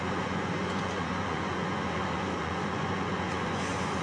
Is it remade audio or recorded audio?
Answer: remade